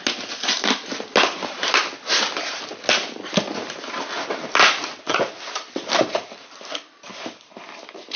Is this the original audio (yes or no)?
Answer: yes